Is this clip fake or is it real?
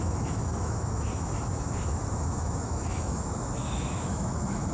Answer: fake